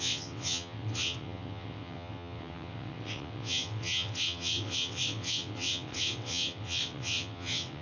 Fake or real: fake